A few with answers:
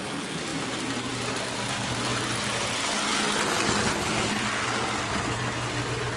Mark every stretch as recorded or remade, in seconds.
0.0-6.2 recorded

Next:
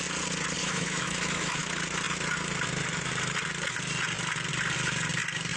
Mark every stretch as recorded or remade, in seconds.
0.0-0.6 recorded; 0.6-1.7 remade; 1.7-5.6 recorded

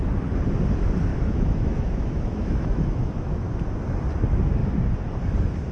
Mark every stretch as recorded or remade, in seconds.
0.0-1.1 recorded; 1.1-3.5 remade; 3.5-5.7 recorded

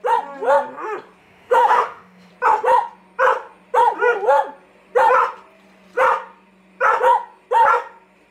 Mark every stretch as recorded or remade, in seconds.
0.0-1.2 recorded; 1.2-2.3 remade; 2.3-8.3 recorded

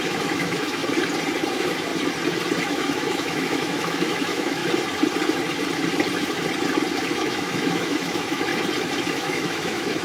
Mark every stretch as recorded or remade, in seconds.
0.0-0.8 remade; 0.8-1.5 recorded; 1.5-1.9 remade; 1.9-2.7 recorded; 2.7-4.6 remade; 4.6-7.0 recorded; 7.0-8.5 remade; 8.5-9.1 recorded; 9.1-10.0 remade

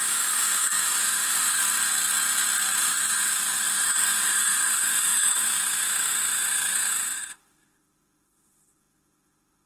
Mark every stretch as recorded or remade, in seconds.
0.0-1.6 remade; 1.6-2.8 recorded; 2.8-9.7 remade

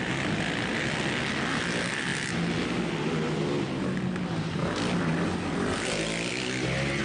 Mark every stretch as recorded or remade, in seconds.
0.0-7.0 recorded